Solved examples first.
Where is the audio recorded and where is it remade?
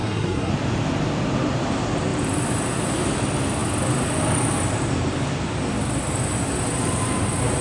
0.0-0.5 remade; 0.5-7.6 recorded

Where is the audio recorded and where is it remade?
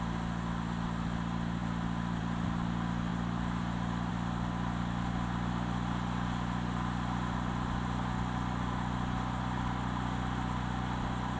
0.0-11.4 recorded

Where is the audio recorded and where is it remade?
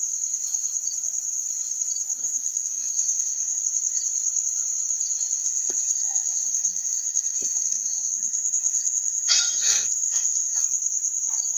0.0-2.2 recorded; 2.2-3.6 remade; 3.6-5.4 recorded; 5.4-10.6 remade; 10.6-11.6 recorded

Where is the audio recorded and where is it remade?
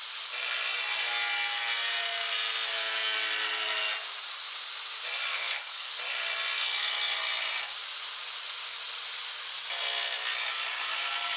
0.0-5.3 recorded; 5.3-5.9 remade; 5.9-11.4 recorded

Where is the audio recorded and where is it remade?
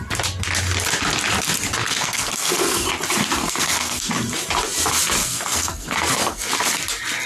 0.0-1.8 recorded; 1.8-2.9 remade; 2.9-3.4 recorded; 3.4-4.1 remade; 4.1-5.2 recorded; 5.2-6.5 remade; 6.5-7.3 recorded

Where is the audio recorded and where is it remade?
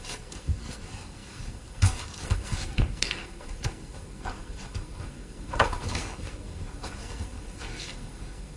0.0-8.6 remade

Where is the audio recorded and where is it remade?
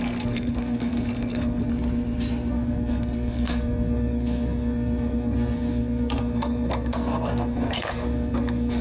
0.0-1.7 remade; 1.7-2.5 recorded; 2.5-8.8 remade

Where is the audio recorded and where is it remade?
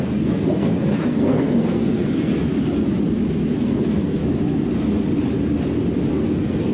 0.0-2.5 remade; 2.5-3.5 recorded; 3.5-4.2 remade; 4.2-6.1 recorded; 6.1-6.7 remade